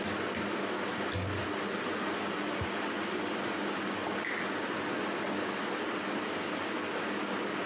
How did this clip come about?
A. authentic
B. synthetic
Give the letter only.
A